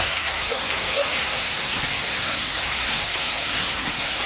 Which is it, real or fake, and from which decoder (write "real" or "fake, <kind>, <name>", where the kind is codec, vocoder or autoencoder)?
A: fake, codec, SNAC